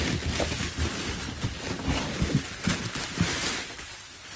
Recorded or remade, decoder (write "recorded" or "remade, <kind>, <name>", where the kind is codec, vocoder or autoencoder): recorded